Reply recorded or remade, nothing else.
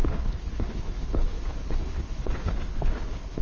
remade